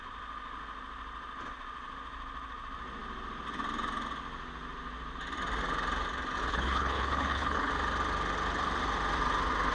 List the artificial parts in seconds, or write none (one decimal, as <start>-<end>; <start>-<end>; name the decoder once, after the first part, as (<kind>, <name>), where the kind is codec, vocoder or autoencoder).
6.5-7.7 (codec, HILCodec)